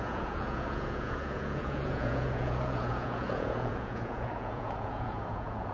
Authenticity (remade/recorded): remade